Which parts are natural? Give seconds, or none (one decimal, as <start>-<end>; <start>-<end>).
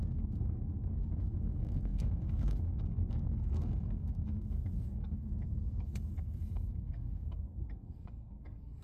none